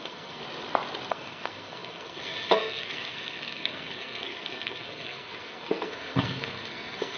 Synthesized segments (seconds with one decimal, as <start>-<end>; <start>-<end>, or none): 0.0-0.4; 1.1-7.2